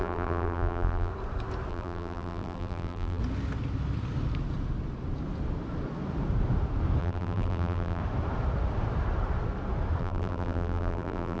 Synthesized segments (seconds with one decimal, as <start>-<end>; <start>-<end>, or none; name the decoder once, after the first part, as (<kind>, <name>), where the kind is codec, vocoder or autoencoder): 0.0-1.1 (vocoder, BigVGAN v2); 1.7-3.2; 7.0-8.0; 10.0-11.4